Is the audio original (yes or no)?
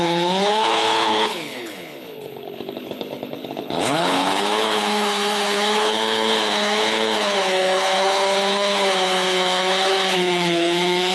no